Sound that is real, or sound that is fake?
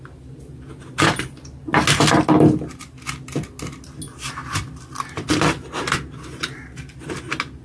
real